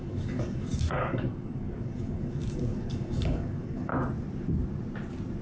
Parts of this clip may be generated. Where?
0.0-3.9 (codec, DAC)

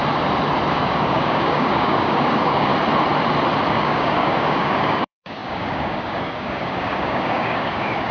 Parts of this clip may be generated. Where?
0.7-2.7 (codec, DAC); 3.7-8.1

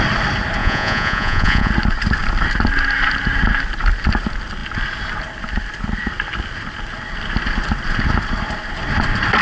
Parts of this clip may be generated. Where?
0.6-1.7 (vocoder, Vocos)

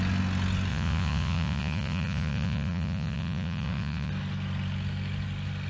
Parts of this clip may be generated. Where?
0.7-4.1 (vocoder, Vocos)